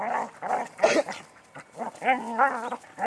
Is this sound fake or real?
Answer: real